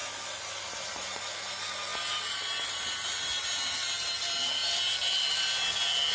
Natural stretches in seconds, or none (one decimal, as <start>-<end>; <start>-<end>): 0.0-6.1